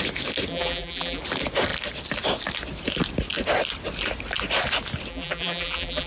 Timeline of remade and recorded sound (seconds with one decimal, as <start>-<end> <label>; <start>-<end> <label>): 0.0-0.5 recorded; 0.5-1.2 remade; 1.2-5.1 recorded; 5.1-6.1 remade